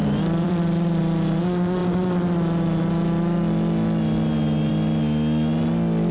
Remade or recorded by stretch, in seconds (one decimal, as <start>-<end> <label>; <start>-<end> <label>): 0.0-1.0 remade; 1.0-6.1 recorded